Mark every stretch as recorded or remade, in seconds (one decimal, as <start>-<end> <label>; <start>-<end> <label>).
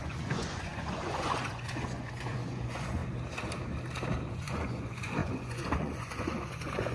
0.0-3.0 remade; 3.0-4.3 recorded; 4.3-6.9 remade